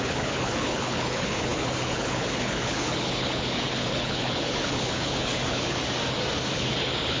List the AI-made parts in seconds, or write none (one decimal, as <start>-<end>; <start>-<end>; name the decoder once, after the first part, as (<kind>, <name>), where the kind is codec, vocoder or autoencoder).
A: 0.0-5.8 (codec, HILCodec); 6.5-7.2